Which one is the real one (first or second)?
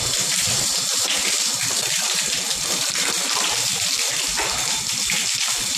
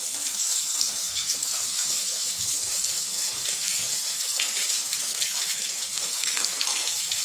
first